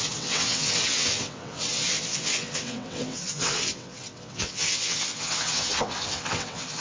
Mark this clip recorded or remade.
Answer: remade